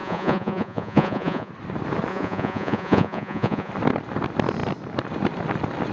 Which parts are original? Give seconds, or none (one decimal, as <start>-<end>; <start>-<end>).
1.5-2.1; 3.7-5.9